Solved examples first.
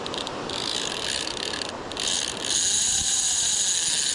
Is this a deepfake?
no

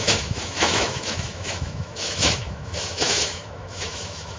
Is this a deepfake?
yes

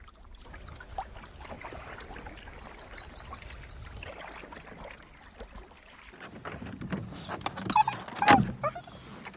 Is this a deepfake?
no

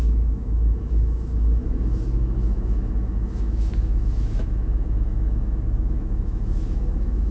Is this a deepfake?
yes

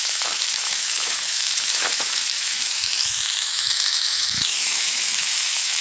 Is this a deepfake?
yes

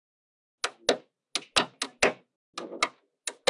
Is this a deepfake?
no